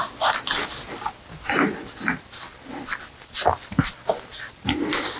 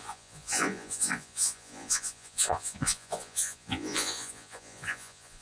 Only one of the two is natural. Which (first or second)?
first